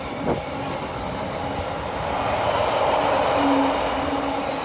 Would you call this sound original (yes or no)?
yes